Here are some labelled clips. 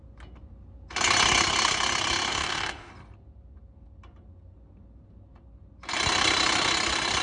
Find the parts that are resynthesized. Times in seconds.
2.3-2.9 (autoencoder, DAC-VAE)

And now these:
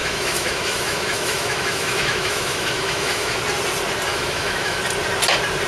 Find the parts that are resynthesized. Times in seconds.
0.0-3.4 (autoencoder, DAC-VAE); 4.1-4.8

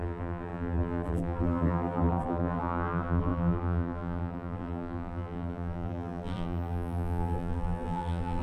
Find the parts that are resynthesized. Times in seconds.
0.0-8.4 (vocoder, BigVGAN v2)

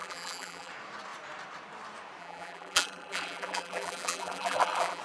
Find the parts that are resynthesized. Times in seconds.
0.0-0.7 (vocoder, BigVGAN v2); 2.2-5.0

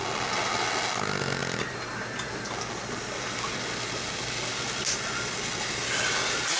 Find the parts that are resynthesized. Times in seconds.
none

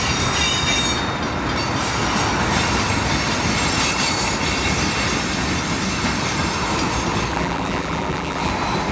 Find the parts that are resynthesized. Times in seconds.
7.3-8.5 (vocoder, BigVGAN v2)

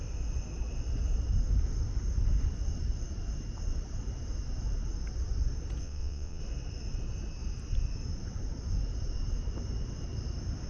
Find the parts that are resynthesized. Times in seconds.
5.8-6.4 (vocoder, WaveNeXt)